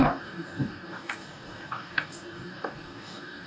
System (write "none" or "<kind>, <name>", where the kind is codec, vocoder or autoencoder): codec, DAC